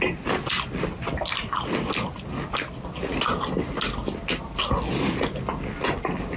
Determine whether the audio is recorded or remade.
recorded